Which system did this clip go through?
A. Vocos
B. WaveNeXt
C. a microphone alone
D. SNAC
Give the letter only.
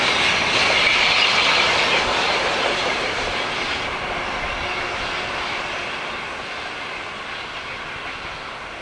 C